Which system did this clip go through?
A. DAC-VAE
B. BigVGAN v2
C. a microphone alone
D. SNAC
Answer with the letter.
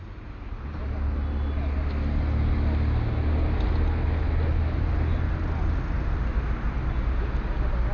C